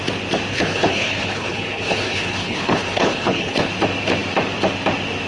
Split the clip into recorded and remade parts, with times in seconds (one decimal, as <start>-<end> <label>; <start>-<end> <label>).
0.0-0.5 recorded; 0.5-3.7 remade; 3.7-5.3 recorded